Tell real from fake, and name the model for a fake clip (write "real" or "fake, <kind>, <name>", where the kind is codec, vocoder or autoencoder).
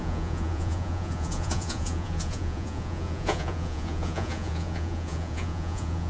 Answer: fake, vocoder, Vocos